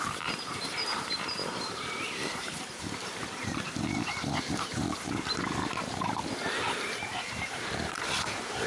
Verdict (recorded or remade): remade